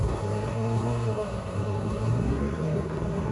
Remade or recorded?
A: remade